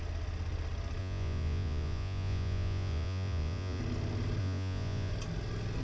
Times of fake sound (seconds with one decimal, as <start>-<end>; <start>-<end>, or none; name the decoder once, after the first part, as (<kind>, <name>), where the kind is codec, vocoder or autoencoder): 1.0-3.8 (vocoder, Vocos); 4.4-5.1